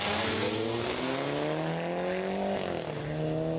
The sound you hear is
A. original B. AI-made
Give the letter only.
A